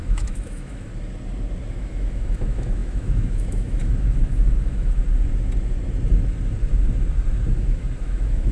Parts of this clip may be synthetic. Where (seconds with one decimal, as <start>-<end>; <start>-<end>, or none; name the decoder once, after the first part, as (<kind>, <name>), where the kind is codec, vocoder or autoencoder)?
0.0-0.9 (autoencoder, DAC-VAE); 1.7-5.0; 7.6-8.5